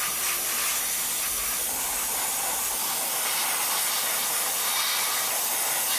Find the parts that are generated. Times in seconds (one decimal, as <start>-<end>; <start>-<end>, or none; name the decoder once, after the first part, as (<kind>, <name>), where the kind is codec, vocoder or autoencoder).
none